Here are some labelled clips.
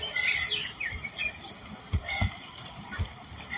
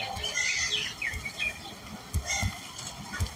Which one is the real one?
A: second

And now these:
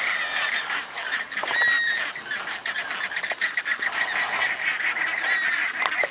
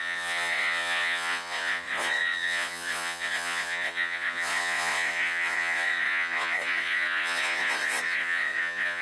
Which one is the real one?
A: first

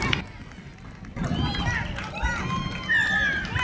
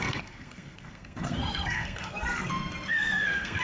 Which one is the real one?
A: first